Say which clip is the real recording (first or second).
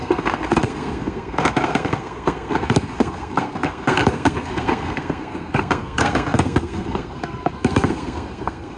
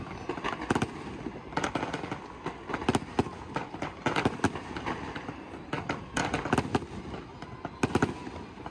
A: second